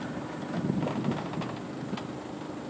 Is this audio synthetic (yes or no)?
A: no